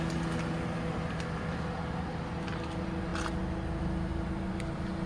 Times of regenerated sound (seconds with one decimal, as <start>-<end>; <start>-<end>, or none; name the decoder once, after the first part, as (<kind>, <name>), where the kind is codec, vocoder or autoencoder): none